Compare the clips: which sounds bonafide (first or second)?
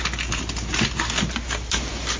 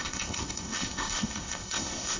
first